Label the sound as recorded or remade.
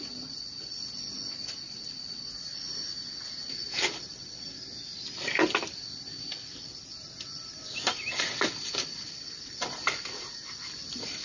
recorded